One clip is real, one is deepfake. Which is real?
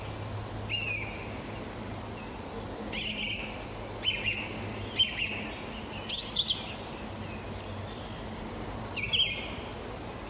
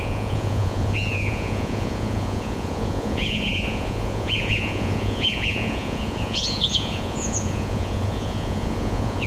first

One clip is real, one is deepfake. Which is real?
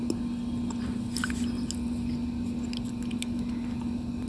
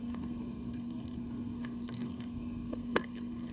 first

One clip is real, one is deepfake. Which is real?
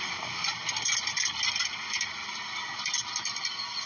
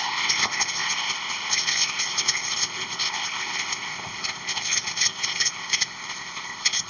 first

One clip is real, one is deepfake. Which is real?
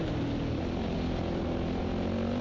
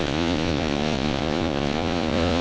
first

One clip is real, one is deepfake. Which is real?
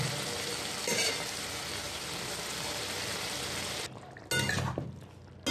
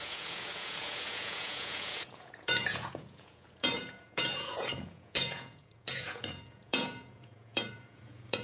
first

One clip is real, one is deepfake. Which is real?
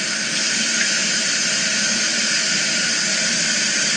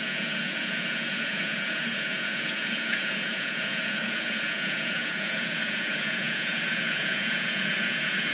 first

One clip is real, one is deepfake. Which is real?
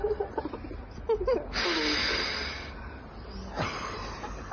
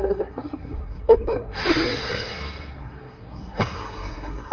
first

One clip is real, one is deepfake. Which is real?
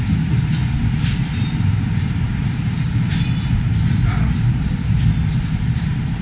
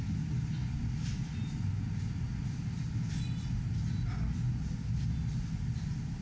second